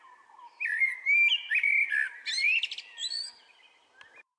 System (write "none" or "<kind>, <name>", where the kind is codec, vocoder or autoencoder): none